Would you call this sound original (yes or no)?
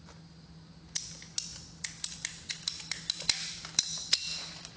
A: yes